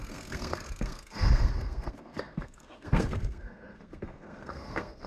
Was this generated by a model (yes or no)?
yes